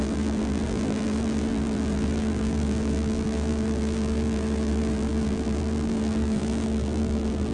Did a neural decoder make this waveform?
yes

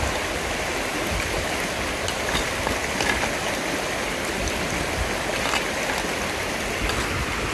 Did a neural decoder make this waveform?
no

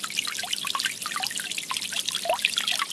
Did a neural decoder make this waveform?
no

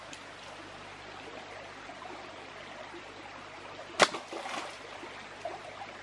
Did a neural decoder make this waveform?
no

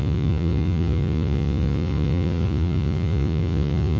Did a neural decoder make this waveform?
yes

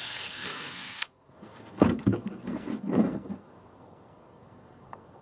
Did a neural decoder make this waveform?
yes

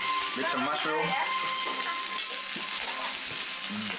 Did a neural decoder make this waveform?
no